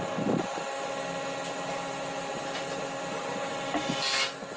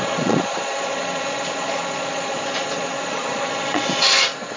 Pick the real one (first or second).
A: first